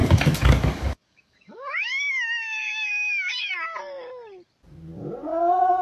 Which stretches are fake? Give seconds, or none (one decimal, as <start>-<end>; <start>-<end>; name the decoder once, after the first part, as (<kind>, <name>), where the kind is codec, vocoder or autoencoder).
0.0-3.5 (codec, DAC)